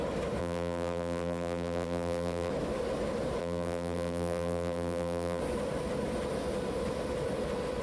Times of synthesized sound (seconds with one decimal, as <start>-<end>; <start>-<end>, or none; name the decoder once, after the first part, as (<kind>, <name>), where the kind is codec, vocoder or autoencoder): 0.4-2.5 (vocoder, BigVGAN v2); 3.4-5.4